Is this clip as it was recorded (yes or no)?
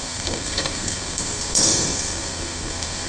no